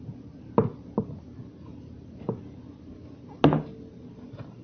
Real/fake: real